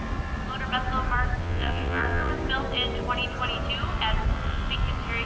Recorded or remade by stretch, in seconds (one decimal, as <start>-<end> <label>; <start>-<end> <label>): 0.0-1.4 recorded; 1.4-2.3 remade; 2.3-5.3 recorded